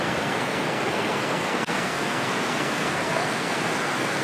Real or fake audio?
fake